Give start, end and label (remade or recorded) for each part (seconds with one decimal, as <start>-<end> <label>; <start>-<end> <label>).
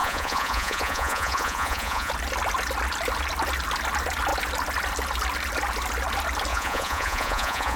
0.0-2.1 remade; 2.1-6.5 recorded; 6.5-7.8 remade